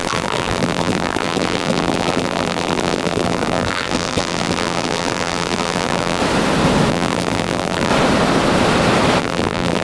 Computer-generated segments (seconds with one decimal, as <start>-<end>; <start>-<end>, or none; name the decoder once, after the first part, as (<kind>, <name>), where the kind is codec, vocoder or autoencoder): 0.0-6.2 (vocoder, BigVGAN v2); 6.9-7.9; 9.2-9.8